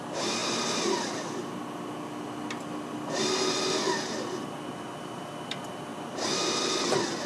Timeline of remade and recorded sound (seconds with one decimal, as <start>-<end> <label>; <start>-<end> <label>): 0.0-7.3 recorded